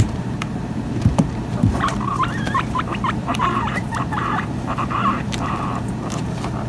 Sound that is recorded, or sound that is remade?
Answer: remade